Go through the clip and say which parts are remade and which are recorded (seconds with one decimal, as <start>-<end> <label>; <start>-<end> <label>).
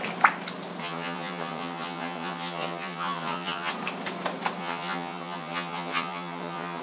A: 0.0-0.8 recorded; 0.8-3.7 remade; 3.7-4.6 recorded; 4.6-6.8 remade